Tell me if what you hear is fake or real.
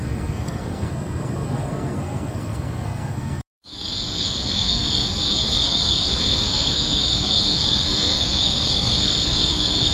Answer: fake